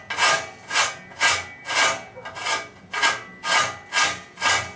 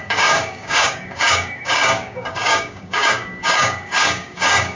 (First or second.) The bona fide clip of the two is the first